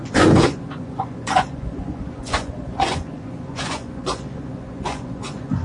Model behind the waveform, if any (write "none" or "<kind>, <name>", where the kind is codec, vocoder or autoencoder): vocoder, Vocos